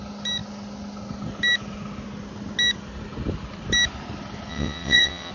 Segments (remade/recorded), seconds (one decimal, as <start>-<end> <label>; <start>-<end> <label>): 0.0-4.5 recorded; 4.5-5.3 remade